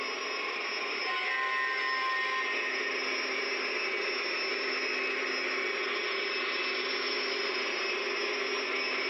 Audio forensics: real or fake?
real